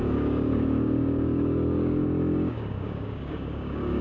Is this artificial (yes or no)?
yes